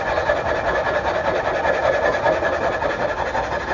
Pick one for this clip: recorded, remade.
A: recorded